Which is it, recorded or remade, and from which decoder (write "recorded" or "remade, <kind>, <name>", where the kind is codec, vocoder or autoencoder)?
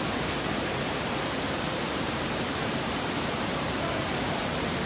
remade, vocoder, BigVGAN v2